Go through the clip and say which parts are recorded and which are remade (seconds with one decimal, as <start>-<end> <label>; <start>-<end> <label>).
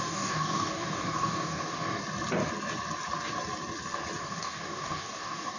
0.0-2.0 remade; 2.0-4.2 recorded; 4.2-5.6 remade